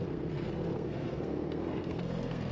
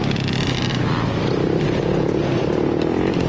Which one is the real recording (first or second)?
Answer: second